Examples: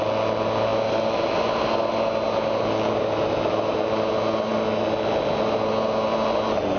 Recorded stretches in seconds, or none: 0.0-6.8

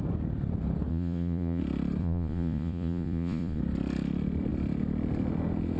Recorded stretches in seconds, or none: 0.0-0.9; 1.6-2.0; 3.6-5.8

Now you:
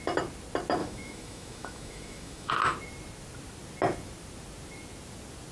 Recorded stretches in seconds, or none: 0.0-0.8; 2.5-5.5